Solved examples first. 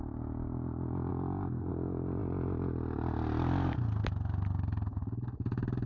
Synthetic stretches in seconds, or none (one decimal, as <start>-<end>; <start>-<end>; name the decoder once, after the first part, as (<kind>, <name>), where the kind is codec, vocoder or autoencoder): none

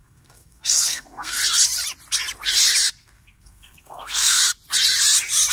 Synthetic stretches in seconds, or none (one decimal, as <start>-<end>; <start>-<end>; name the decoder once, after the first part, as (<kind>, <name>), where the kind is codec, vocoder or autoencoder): 0.0-1.4 (codec, SNAC); 3.0-4.4

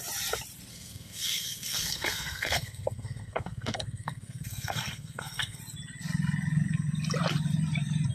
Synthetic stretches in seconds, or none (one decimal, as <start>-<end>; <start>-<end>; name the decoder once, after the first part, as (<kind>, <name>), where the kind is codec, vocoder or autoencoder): 0.7-5.6 (codec, SNAC)

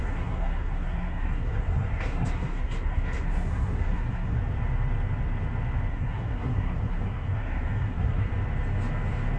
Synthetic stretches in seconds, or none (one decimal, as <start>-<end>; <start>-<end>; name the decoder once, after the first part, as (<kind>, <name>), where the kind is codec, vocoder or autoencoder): 0.0-4.4 (codec, SNAC); 5.9-8.3

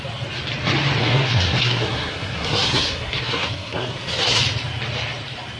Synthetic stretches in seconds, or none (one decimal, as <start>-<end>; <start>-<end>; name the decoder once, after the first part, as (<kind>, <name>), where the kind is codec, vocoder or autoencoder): 1.0-4.4 (codec, SNAC)